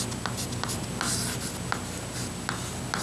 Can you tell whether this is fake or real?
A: real